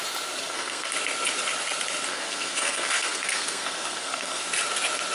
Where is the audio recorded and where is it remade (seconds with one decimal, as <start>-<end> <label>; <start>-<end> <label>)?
0.0-0.4 recorded; 0.4-0.9 remade; 0.9-2.1 recorded; 2.1-4.4 remade; 4.4-5.1 recorded